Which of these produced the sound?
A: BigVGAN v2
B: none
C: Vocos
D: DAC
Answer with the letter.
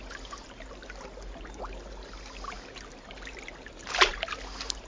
B